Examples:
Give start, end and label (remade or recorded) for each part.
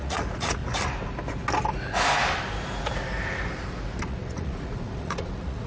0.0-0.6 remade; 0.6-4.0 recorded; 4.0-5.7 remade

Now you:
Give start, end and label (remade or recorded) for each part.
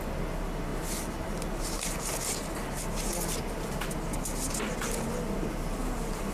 0.0-6.3 recorded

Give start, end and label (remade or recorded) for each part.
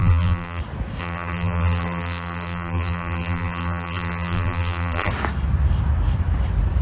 0.0-0.6 remade; 0.6-1.0 recorded; 1.0-5.1 remade; 5.1-6.8 recorded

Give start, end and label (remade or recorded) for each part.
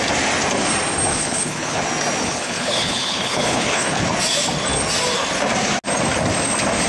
0.0-1.1 recorded; 1.1-1.8 remade; 1.8-2.2 recorded; 2.2-4.0 remade; 4.0-6.9 recorded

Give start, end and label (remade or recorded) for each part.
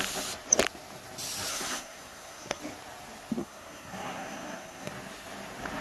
0.0-1.5 recorded; 1.5-2.6 remade; 2.6-3.4 recorded; 3.4-4.9 remade; 4.9-5.8 recorded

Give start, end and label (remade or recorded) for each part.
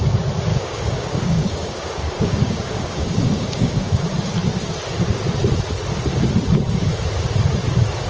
0.0-0.5 recorded; 0.5-4.0 remade; 4.0-8.1 recorded